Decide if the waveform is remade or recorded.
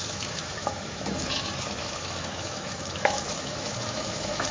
remade